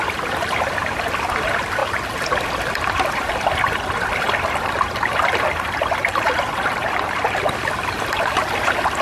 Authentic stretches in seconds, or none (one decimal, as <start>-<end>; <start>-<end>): 1.8-2.9